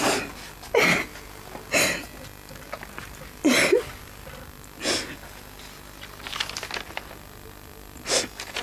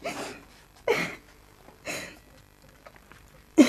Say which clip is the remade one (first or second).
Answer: second